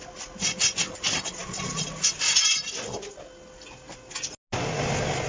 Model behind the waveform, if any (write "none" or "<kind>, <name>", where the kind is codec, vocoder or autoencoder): none